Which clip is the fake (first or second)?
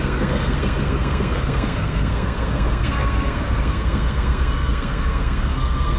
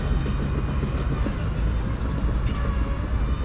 first